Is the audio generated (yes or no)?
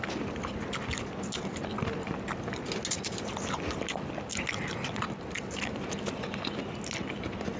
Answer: no